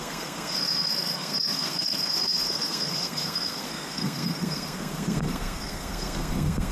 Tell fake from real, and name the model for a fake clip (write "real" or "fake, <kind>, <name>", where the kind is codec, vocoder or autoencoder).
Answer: fake, codec, SNAC